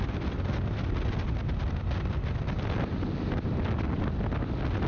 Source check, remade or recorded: recorded